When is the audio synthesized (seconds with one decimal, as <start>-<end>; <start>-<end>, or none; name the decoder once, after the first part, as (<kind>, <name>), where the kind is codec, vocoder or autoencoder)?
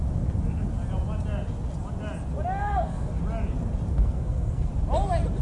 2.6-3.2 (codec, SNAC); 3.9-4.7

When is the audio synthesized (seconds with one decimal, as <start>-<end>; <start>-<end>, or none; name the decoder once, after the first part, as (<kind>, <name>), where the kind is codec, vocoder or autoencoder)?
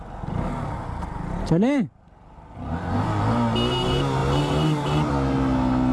4.2-5.1 (vocoder, BigVGAN v2)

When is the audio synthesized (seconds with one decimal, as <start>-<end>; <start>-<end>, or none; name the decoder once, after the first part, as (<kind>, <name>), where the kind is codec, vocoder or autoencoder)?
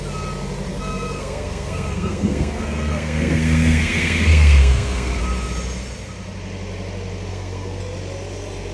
0.7-5.2 (codec, SNAC); 7.3-7.8